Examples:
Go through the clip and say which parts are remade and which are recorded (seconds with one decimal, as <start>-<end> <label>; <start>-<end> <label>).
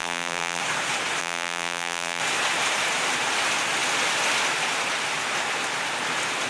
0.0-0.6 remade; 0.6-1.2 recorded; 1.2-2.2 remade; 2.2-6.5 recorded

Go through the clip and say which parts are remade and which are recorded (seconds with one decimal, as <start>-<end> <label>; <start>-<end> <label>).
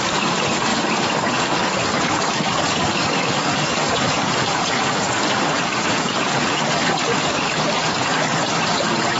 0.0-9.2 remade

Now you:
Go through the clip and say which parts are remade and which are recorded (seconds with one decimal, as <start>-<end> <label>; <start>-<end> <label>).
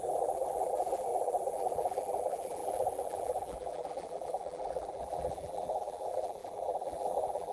0.0-7.5 remade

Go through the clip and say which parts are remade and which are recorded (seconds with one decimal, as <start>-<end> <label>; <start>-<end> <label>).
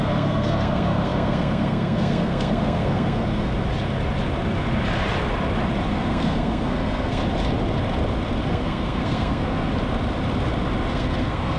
0.0-3.5 remade; 3.5-5.9 recorded; 5.9-7.2 remade; 7.2-8.5 recorded; 8.5-9.7 remade; 9.7-10.9 recorded; 10.9-11.6 remade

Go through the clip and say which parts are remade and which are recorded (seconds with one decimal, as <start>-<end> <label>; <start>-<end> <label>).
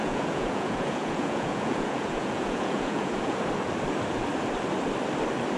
0.0-3.4 remade; 3.4-5.6 recorded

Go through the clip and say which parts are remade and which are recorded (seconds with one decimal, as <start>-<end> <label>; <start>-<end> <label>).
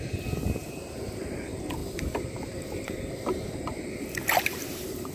0.0-0.6 recorded; 0.6-1.2 remade; 1.2-1.8 recorded; 1.8-3.1 remade; 3.1-5.1 recorded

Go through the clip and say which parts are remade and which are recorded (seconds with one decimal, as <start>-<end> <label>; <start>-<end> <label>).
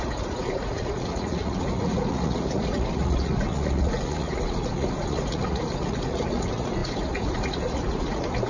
0.0-8.5 remade